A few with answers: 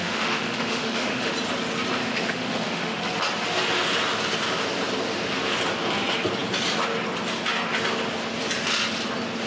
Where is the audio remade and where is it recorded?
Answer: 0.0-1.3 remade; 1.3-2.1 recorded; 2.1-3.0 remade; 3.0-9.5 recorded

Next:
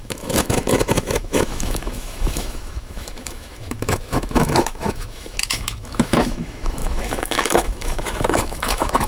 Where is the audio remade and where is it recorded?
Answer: 0.0-9.1 remade

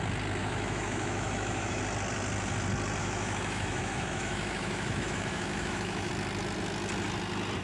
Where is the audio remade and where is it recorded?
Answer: 0.0-0.4 recorded; 0.4-1.8 remade; 1.8-3.0 recorded; 3.0-6.1 remade; 6.1-7.6 recorded

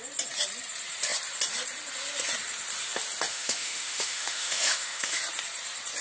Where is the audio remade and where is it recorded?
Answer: 0.0-3.3 recorded; 3.3-5.2 remade; 5.2-6.0 recorded

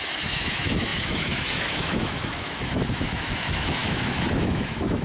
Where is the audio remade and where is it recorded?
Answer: 0.0-5.0 remade

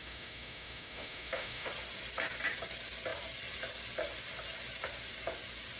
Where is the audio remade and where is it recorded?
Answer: 0.0-1.7 remade; 1.7-5.8 recorded